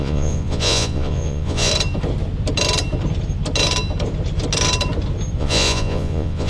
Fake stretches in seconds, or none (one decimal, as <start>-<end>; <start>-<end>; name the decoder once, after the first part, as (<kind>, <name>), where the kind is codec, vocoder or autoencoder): 0.0-1.7 (vocoder, Vocos); 5.4-6.5